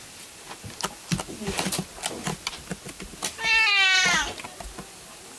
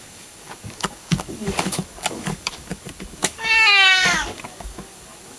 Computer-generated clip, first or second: second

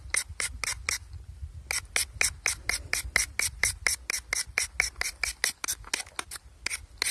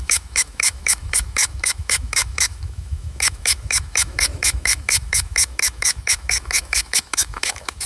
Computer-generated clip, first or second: second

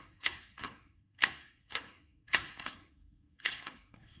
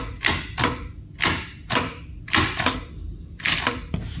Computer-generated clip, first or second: first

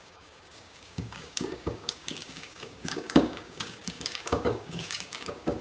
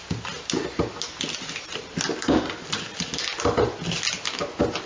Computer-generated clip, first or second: first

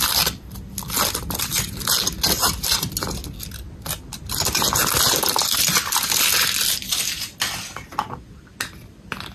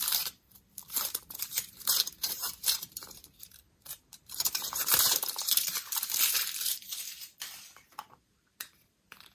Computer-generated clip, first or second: second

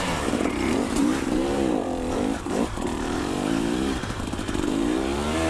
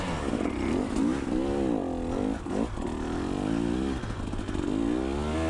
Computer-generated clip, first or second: first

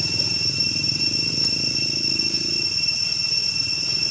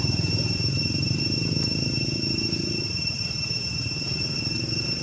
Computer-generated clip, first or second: second